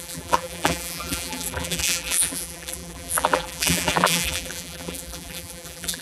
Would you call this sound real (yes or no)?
no